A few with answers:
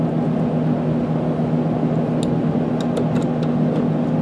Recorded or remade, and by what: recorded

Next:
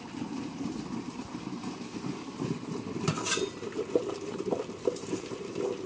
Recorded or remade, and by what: remade, vocoder, BigVGAN v2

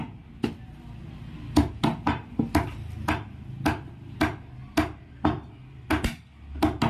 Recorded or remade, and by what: recorded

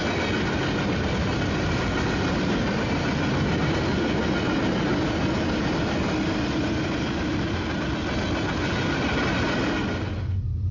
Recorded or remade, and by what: recorded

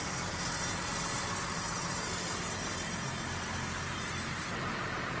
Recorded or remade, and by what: remade, vocoder, BigVGAN v2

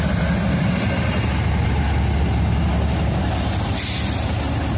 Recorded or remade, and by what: recorded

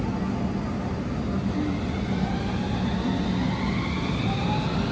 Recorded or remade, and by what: recorded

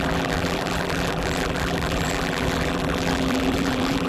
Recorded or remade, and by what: remade, vocoder, BigVGAN v2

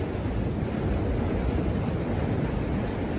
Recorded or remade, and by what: remade, vocoder, BigVGAN v2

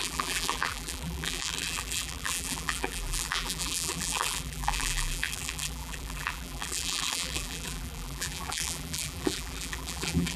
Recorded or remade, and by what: remade, vocoder, BigVGAN v2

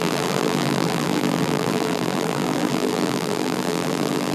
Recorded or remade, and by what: remade, vocoder, BigVGAN v2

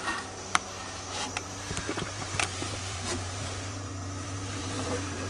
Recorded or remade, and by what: remade, vocoder, BigVGAN v2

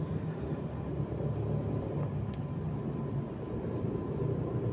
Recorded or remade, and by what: recorded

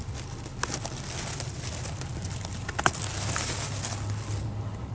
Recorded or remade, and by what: recorded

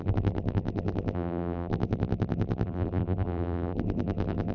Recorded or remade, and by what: remade, vocoder, BigVGAN v2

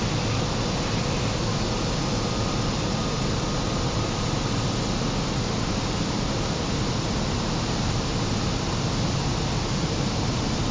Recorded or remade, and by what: recorded